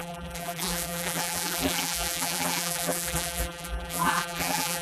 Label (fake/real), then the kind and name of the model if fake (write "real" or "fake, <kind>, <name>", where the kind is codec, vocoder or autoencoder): fake, vocoder, BigVGAN v2